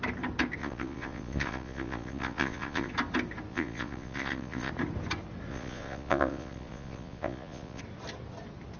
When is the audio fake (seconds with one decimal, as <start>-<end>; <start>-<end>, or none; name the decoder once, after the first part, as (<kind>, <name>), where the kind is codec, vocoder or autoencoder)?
0.6-2.9 (vocoder, Vocos); 3.5-4.7; 5.5-7.8